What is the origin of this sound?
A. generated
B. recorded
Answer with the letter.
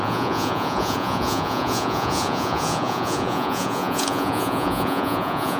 A